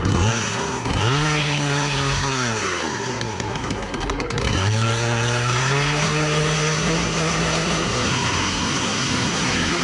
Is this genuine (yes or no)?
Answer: no